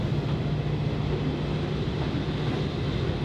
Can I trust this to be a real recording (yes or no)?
yes